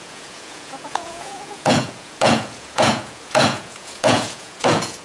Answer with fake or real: fake